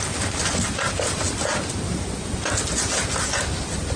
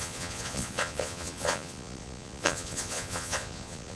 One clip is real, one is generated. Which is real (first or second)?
first